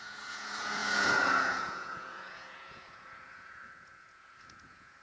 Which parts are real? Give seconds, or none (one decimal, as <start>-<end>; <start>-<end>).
none